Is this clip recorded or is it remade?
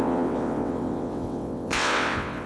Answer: remade